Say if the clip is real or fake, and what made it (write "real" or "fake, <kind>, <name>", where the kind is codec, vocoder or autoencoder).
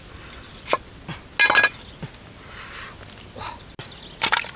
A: real